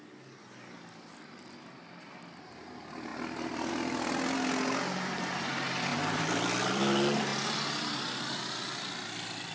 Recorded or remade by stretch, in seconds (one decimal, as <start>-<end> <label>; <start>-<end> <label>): 0.0-5.9 recorded; 5.9-6.8 remade; 6.8-9.5 recorded